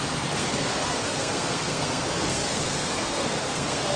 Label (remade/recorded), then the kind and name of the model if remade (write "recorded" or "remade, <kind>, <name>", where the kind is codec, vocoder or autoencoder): remade, codec, SNAC